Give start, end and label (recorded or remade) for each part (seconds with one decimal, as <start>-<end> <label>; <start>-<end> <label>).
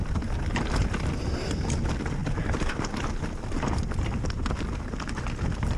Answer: 0.0-5.8 recorded